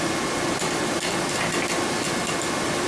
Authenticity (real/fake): real